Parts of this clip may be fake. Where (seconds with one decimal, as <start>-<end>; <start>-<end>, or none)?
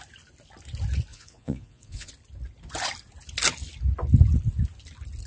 1.1-2.1